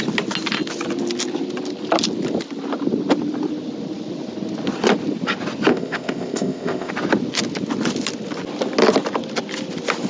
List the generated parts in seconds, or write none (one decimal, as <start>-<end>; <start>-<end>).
5.7-6.9